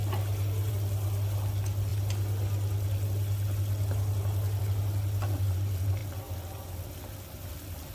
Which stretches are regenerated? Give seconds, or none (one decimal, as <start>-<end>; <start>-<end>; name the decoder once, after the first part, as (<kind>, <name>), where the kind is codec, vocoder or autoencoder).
none